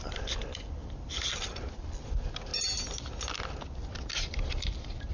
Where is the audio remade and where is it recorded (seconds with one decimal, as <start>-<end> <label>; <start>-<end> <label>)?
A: 0.0-5.1 recorded